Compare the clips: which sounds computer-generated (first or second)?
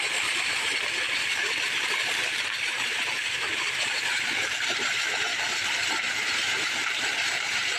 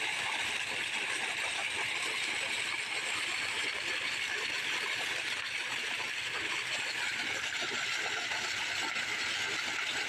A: first